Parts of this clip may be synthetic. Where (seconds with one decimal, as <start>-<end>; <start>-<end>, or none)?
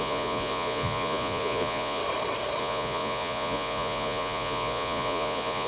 0.0-2.0; 2.6-5.7